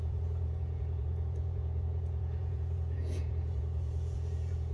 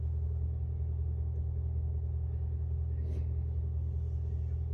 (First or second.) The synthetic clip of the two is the first